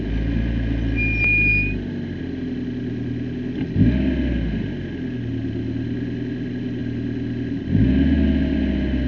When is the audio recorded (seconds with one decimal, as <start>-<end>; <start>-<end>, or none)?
0.0-9.1

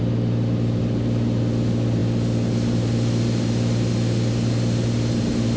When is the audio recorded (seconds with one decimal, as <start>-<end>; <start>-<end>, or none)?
0.0-5.6

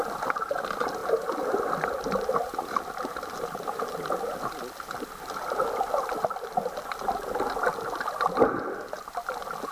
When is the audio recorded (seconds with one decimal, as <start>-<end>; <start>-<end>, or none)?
0.0-9.7

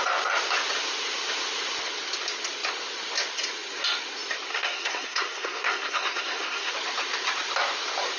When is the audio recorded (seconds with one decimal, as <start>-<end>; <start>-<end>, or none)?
0.0-4.5; 6.7-8.2

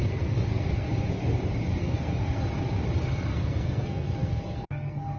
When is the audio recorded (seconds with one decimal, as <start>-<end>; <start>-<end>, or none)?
0.9-1.7; 2.4-3.3

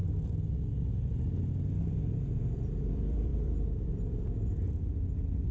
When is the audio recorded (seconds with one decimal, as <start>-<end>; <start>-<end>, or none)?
0.0-1.8

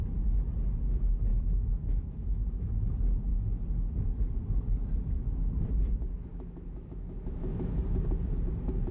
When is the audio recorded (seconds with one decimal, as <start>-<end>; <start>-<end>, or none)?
0.0-1.3; 2.9-6.3; 7.8-8.9